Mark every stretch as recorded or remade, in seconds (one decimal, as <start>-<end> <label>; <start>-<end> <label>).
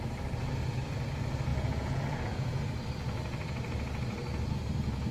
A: 0.0-1.5 recorded; 1.5-2.5 remade; 2.5-5.1 recorded